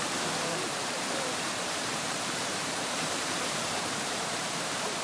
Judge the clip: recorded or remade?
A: remade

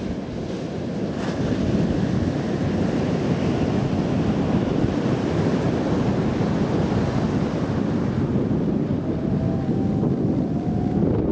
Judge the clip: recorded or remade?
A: recorded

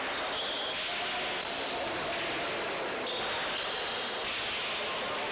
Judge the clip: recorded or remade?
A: recorded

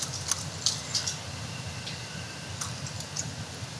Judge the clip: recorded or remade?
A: recorded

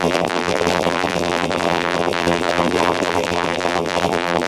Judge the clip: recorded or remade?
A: remade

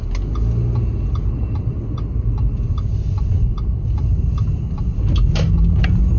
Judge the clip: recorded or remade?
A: recorded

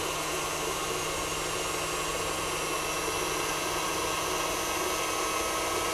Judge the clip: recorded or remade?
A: recorded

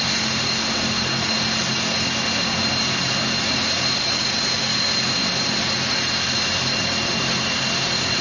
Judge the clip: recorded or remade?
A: recorded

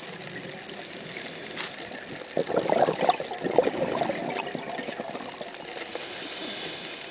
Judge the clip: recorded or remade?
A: recorded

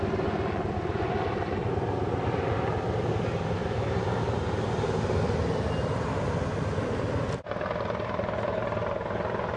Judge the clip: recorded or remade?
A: recorded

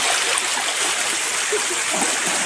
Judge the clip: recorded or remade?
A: recorded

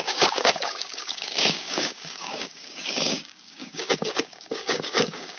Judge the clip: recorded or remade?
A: remade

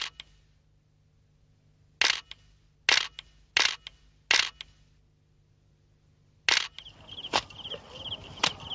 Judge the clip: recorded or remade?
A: recorded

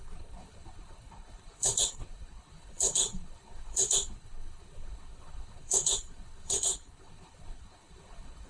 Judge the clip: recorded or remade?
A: remade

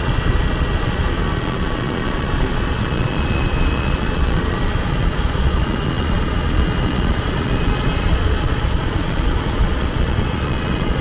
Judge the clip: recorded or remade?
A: remade